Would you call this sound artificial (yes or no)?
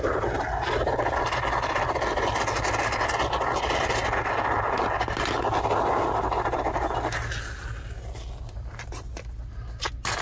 no